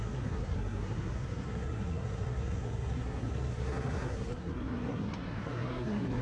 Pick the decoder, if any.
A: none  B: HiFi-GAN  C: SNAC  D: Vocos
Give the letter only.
C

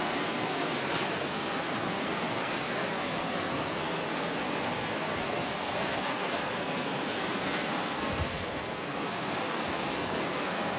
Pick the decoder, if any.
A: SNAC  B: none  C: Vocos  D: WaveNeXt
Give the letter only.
A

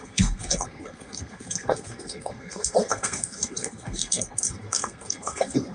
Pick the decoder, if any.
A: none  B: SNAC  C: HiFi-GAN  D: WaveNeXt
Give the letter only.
B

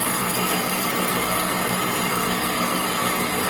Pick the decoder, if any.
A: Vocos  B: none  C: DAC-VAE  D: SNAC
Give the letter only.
D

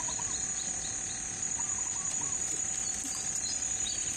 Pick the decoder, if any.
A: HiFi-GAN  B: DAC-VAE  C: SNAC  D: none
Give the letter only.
D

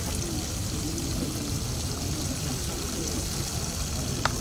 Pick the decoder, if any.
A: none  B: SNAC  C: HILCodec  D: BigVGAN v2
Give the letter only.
A